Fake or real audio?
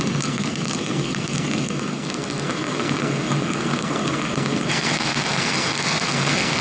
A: fake